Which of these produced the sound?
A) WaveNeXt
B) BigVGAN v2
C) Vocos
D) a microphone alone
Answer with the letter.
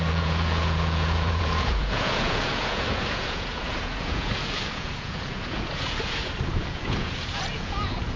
C